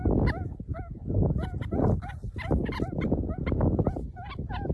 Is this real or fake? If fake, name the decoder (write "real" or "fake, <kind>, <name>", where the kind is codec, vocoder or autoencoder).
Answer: real